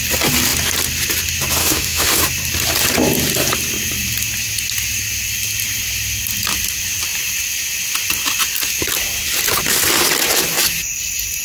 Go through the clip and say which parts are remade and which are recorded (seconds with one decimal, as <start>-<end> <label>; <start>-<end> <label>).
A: 0.0-1.6 recorded; 1.6-2.2 remade; 2.2-11.4 recorded